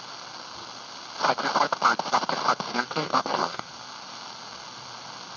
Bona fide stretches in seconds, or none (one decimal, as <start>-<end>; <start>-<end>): 0.0-2.7; 3.7-5.4

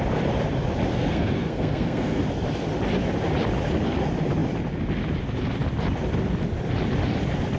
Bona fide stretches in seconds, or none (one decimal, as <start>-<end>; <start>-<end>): 0.0-0.9; 2.2-7.6

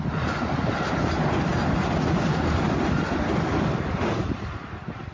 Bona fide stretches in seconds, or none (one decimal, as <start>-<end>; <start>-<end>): 0.0-5.1

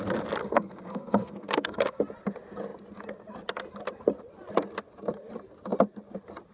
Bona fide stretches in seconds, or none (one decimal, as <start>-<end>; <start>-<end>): 0.0-0.4; 2.0-6.5

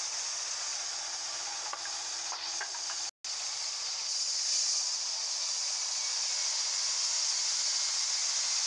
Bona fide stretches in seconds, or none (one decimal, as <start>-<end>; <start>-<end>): 0.0-8.7